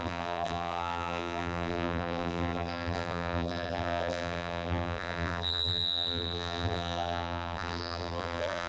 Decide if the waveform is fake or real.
fake